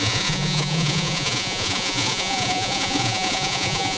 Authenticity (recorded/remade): remade